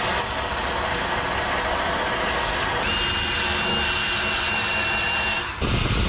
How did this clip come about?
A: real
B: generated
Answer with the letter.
A